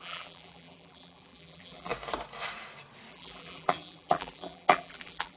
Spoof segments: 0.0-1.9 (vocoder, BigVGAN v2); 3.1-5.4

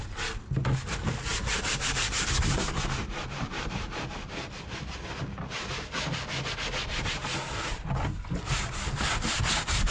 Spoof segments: 1.3-4.0 (vocoder, BigVGAN v2)

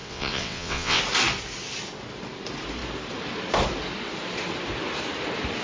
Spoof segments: 0.0-1.0 (vocoder, WaveNeXt)

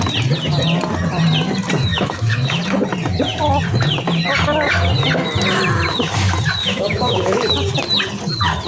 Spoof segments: 1.9-2.6 (autoencoder, DAC-VAE); 6.6-7.5

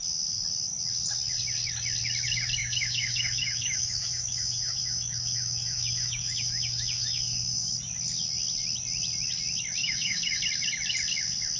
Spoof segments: 2.6-7.7 (autoencoder, DAC-VAE); 9.8-10.4